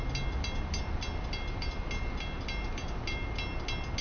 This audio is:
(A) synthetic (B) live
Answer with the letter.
B